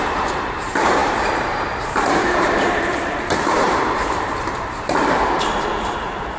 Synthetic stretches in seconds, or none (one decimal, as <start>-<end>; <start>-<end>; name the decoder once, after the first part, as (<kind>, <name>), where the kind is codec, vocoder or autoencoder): 0.0-6.4 (vocoder, BigVGAN v2)